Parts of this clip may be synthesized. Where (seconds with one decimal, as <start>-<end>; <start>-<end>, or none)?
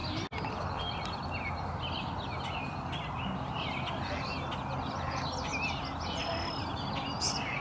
none